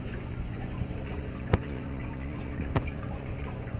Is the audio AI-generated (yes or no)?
yes